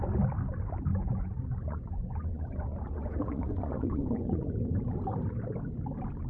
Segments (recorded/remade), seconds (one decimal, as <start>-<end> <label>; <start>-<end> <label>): 0.0-0.9 recorded; 0.9-4.5 remade; 4.5-6.3 recorded